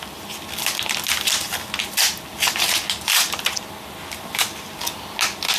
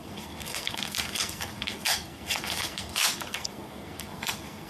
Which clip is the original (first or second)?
first